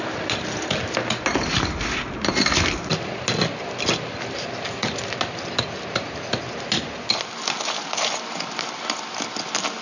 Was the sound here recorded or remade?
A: recorded